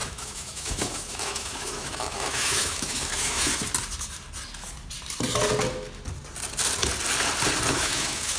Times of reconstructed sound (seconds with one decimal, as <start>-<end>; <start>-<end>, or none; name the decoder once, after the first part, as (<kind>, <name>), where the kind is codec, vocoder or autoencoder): 0.0-3.5 (autoencoder, DAC-VAE); 7.7-8.4